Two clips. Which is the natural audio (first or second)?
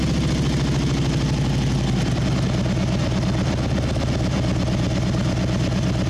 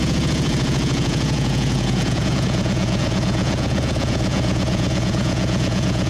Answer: first